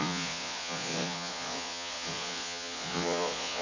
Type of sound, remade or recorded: remade